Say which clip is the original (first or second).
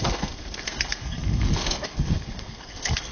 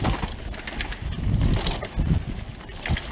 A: second